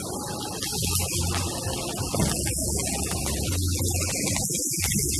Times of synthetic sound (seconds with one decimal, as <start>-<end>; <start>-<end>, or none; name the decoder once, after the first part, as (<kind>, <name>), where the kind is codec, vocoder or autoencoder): none